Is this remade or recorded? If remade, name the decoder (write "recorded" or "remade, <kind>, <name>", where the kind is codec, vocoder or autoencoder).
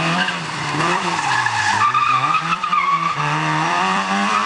remade, vocoder, BigVGAN v2